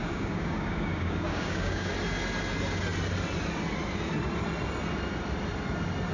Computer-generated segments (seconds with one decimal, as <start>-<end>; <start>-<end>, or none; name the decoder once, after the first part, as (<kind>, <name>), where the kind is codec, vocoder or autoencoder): 0.0-1.9 (codec, DAC)